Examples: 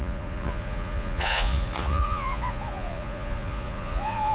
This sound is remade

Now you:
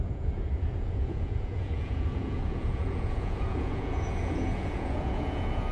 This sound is remade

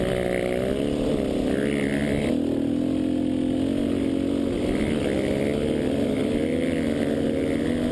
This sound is recorded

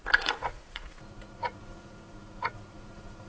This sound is remade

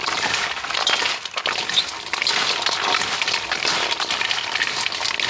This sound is recorded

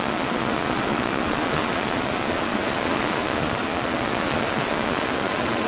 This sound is remade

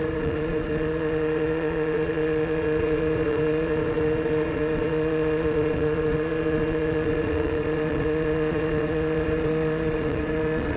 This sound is remade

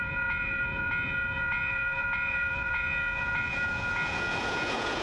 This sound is remade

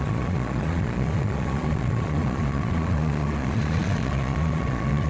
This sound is remade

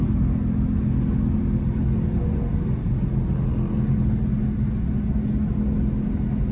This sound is recorded